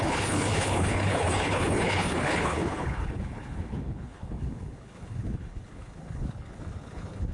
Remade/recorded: remade